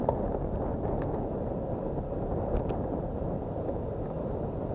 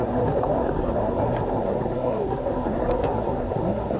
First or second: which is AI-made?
second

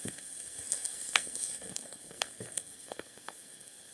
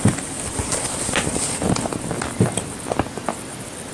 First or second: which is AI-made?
first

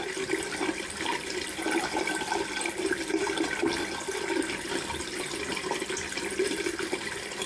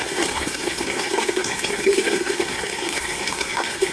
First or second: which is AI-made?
second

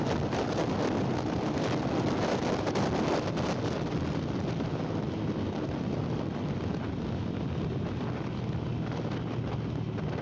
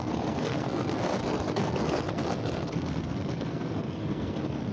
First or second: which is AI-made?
second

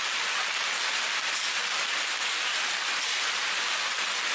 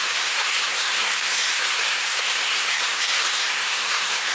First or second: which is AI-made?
second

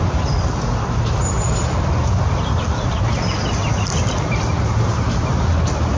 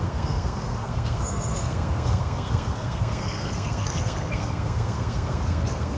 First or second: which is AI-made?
second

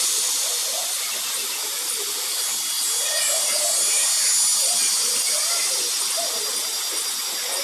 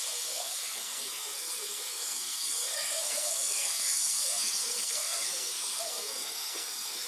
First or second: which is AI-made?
second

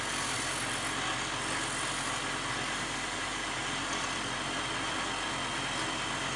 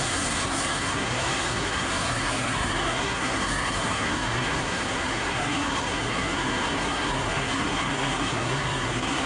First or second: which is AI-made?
second